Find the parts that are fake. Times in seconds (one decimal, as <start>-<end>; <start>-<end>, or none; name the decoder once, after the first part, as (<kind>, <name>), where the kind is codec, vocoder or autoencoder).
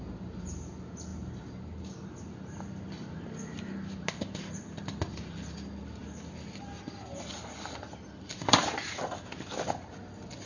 none